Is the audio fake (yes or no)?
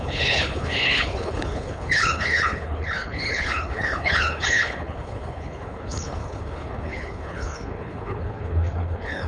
yes